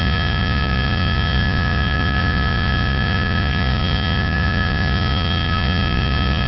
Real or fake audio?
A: fake